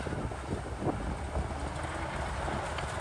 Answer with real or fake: real